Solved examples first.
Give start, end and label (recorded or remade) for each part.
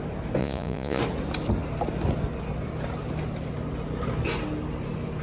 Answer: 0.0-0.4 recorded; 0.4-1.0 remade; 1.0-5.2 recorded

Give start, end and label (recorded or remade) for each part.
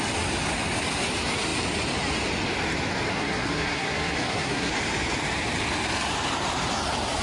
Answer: 0.0-3.1 recorded; 3.1-4.7 remade; 4.7-7.2 recorded